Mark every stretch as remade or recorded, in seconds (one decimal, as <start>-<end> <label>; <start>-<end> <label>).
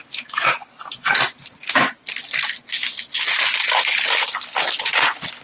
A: 0.0-5.4 recorded